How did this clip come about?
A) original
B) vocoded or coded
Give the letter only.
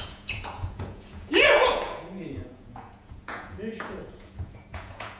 B